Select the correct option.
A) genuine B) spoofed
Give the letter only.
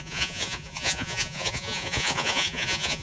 B